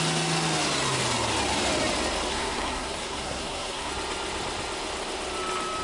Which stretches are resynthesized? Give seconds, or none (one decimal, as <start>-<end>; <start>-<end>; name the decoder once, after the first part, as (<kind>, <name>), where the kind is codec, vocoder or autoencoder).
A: 2.3-3.9 (codec, SNAC)